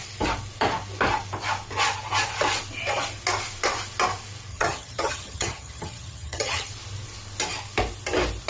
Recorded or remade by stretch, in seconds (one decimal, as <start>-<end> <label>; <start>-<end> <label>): 0.0-4.5 recorded; 4.5-6.7 remade; 6.7-8.5 recorded

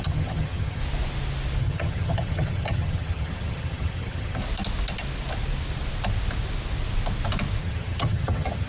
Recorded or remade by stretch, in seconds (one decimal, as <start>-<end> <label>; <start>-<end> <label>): 0.0-0.8 remade; 0.8-1.6 recorded; 1.6-4.4 remade; 4.4-7.6 recorded; 7.6-8.7 remade

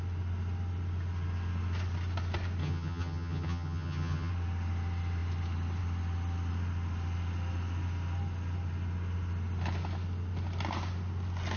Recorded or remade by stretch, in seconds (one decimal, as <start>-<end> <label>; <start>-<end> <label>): 0.0-2.6 recorded; 2.6-4.3 remade; 4.3-11.6 recorded